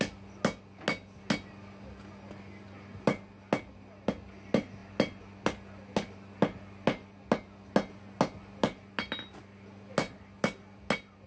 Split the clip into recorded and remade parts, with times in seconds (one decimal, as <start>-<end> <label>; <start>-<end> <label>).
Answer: 0.0-11.3 recorded